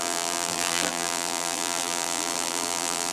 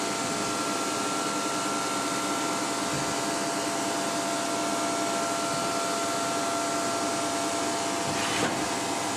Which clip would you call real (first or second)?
second